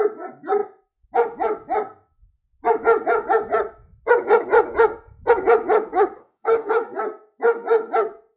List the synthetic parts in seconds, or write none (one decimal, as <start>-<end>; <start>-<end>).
6.2-6.7